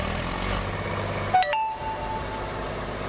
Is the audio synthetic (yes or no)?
no